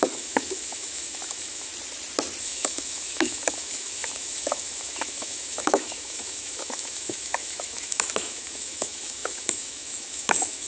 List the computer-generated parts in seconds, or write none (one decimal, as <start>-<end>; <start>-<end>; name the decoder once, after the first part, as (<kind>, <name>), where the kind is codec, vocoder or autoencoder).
0.0-1.7 (autoencoder, DAC-VAE); 2.4-10.7